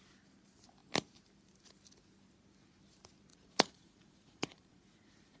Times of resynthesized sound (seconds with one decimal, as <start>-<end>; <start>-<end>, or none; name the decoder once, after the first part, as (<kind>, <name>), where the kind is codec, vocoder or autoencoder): 3.3-5.4 (vocoder, Vocos)